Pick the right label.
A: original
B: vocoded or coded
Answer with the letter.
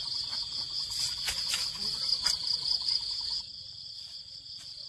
A